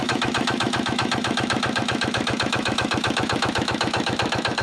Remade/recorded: remade